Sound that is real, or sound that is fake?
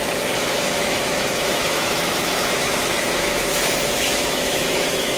fake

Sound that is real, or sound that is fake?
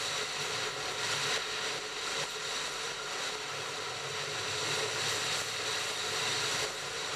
real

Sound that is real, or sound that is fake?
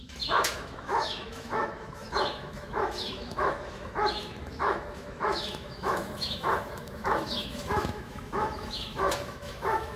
fake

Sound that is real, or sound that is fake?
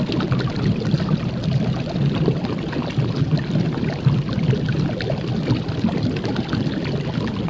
real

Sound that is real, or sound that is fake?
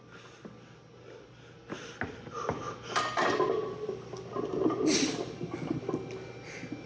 real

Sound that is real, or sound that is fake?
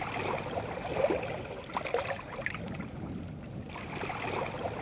real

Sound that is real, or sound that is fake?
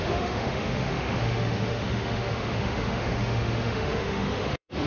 fake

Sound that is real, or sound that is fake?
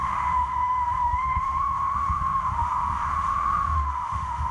fake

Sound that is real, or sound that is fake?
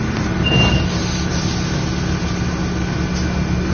real